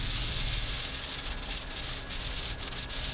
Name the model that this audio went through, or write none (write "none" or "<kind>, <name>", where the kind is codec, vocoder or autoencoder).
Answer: none